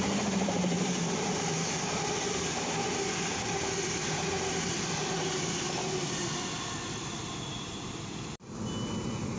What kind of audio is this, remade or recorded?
remade